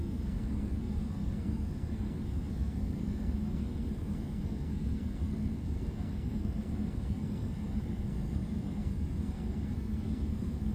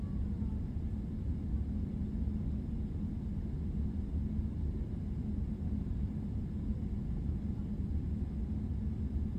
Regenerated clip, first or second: first